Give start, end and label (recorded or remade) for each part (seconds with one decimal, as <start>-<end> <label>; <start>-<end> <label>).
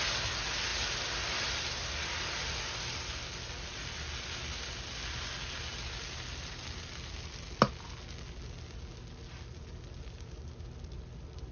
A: 0.0-11.5 recorded